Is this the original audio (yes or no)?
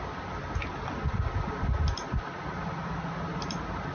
yes